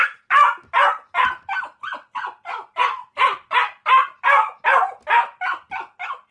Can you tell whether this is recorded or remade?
recorded